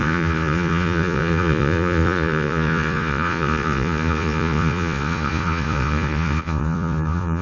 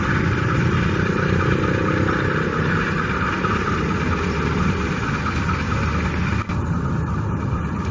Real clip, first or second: second